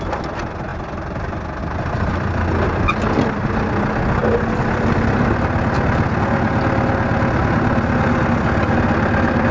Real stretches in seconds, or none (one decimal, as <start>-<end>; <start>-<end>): 0.0-9.5

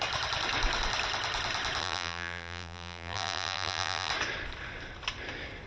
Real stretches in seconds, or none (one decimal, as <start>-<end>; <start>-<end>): 0.0-1.8; 4.1-5.7

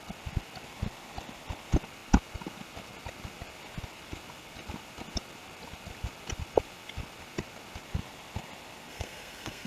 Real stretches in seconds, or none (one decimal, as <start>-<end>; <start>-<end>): 0.0-8.9

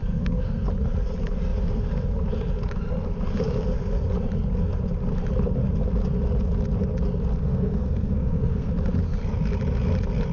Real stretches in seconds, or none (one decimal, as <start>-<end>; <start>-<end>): 0.6-7.4; 8.7-10.3

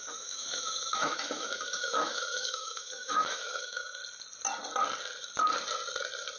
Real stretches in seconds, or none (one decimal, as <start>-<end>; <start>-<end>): 4.0-6.4

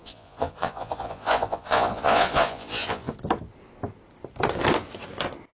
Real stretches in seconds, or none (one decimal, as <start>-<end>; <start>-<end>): 3.1-5.6

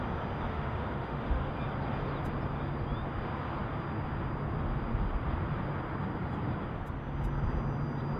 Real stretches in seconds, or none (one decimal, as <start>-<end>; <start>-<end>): 0.0-0.5; 1.5-8.2